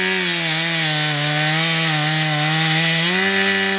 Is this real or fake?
real